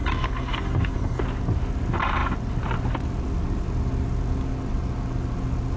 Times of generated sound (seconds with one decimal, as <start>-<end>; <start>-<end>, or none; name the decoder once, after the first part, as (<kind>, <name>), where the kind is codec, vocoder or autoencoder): 0.0-1.2 (codec, SNAC)